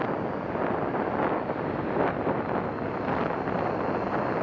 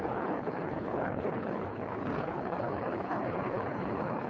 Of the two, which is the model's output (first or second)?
second